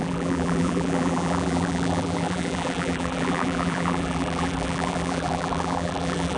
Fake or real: fake